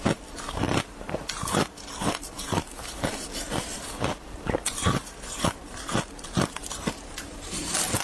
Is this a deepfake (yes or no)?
yes